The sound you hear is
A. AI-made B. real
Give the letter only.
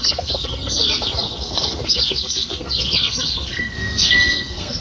A